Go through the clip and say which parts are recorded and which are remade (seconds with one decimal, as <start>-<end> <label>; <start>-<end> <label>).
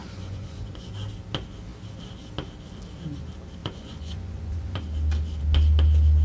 0.0-0.9 remade; 0.9-3.6 recorded; 3.6-4.8 remade; 4.8-6.2 recorded